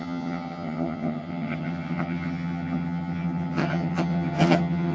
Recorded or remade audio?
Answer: remade